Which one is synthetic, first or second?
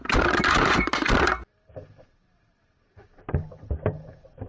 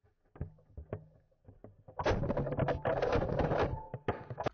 first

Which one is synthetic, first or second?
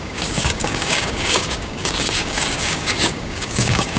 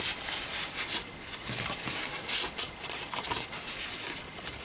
first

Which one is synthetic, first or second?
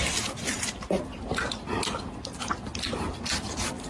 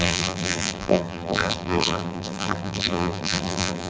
second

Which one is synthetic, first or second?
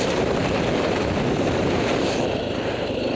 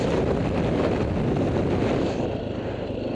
first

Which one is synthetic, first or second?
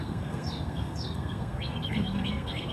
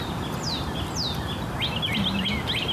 first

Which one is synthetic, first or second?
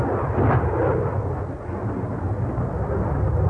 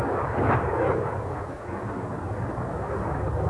second